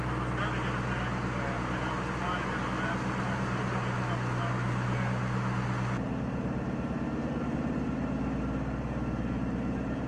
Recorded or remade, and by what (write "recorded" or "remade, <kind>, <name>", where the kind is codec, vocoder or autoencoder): recorded